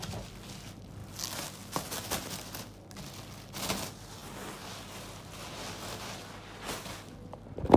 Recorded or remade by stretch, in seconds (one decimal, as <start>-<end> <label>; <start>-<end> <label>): 0.0-7.8 recorded